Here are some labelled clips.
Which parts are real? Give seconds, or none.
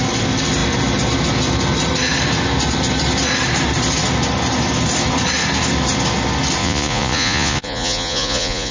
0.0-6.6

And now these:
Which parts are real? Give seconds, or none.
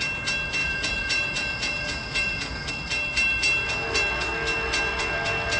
0.0-0.6; 2.7-5.6